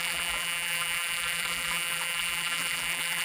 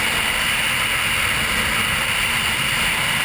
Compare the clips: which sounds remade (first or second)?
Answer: first